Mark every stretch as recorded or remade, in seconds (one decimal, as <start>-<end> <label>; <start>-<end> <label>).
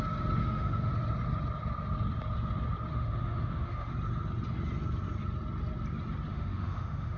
0.0-0.4 recorded; 0.4-0.9 remade; 0.9-2.9 recorded; 2.9-3.9 remade; 3.9-6.3 recorded; 6.3-7.2 remade